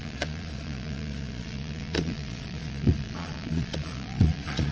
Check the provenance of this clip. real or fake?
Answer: fake